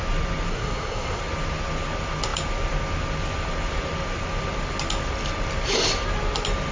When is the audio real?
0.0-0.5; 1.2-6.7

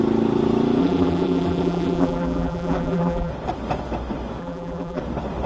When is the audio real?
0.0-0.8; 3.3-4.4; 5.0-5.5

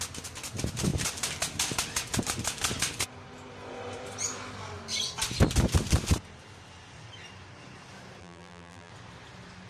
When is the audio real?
0.0-8.2; 8.9-9.7

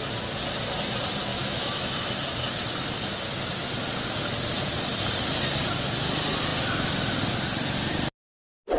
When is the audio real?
0.0-1.3; 1.9-8.8